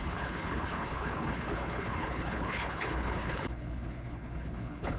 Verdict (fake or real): fake